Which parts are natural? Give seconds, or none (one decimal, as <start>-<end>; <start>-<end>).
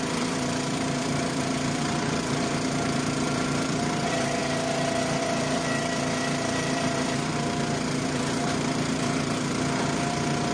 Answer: 4.4-5.2